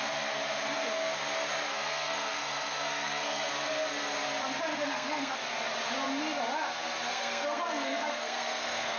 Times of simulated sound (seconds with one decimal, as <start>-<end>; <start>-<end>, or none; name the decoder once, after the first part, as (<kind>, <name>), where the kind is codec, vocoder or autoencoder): 1.7-3.5 (codec, SNAC); 4.7-5.3; 7.1-9.0